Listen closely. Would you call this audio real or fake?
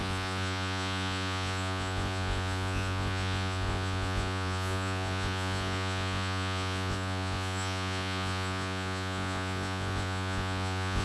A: fake